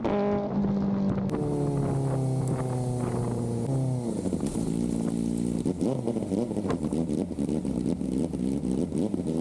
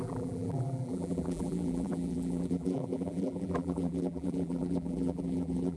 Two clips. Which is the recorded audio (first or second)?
first